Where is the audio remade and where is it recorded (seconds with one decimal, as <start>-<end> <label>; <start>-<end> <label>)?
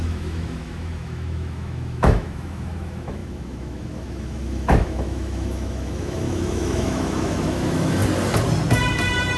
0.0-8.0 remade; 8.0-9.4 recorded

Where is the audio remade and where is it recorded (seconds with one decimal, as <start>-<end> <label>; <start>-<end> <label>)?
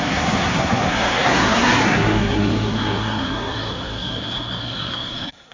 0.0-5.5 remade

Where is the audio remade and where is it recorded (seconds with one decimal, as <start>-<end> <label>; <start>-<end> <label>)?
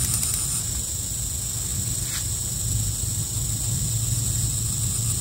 0.0-5.2 recorded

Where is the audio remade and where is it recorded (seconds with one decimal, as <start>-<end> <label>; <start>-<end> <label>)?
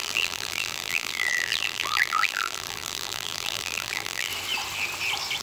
0.0-4.3 remade; 4.3-5.4 recorded